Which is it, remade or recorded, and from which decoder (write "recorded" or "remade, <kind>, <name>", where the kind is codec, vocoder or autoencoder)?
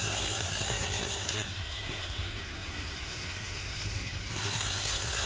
remade, codec, SNAC